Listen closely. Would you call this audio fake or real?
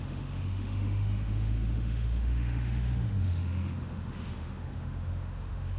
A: fake